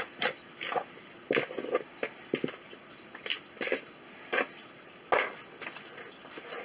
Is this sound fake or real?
real